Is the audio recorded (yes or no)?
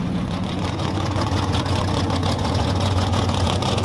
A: no